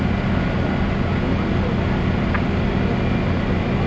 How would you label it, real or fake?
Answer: real